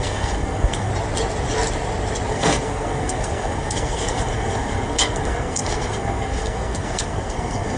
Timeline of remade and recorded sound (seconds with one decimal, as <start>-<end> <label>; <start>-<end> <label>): 0.0-0.9 remade; 0.9-2.3 recorded; 2.3-7.8 remade